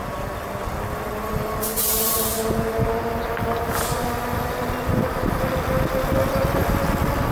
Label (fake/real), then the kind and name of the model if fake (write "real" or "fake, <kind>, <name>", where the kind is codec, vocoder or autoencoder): real